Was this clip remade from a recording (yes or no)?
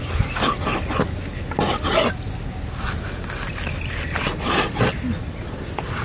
no